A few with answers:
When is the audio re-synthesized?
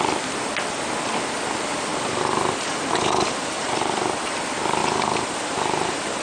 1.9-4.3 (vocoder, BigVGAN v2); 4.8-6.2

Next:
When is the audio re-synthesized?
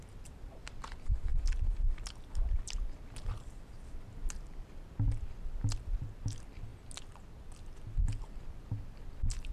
0.0-6.7 (vocoder, BigVGAN v2); 8.2-9.5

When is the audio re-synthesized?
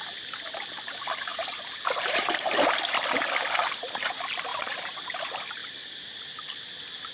1.3-2.7 (vocoder, BigVGAN v2); 5.6-6.2